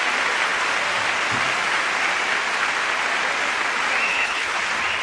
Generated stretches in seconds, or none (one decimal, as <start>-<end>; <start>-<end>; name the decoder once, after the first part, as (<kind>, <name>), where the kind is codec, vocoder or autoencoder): 4.1-4.6 (codec, HILCodec)